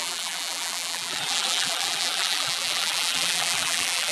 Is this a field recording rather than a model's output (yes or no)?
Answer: no